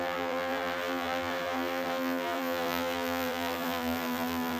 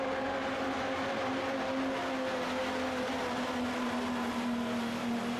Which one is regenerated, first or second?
first